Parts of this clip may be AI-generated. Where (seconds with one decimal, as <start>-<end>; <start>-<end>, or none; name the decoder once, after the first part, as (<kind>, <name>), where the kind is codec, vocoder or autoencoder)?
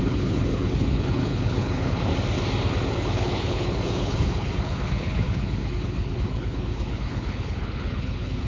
0.0-2.1 (codec, HILCodec); 2.9-8.5